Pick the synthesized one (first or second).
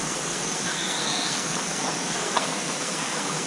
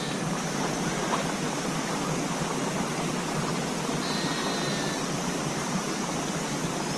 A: first